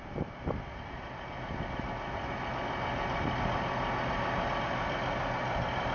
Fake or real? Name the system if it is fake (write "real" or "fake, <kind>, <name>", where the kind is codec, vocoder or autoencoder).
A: real